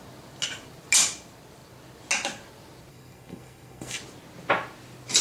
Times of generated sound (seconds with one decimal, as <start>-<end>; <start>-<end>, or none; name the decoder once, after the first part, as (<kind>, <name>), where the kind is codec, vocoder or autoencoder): 2.9-4.0 (codec, SNAC)